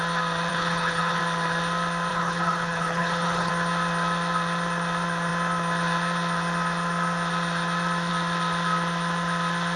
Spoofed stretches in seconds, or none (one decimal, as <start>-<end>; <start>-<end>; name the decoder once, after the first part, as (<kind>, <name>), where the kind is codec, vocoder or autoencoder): 0.5-1.2 (codec, HILCodec); 2.1-3.5